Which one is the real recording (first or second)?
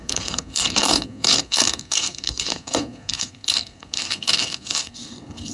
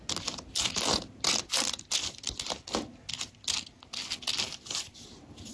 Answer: second